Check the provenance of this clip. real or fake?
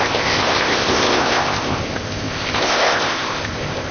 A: fake